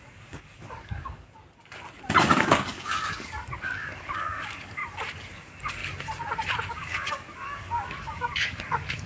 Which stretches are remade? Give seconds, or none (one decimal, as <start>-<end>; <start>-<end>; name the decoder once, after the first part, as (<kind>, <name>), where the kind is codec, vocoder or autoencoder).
0.0-1.4 (codec, DAC); 2.3-4.8; 5.3-5.8; 6.7-9.1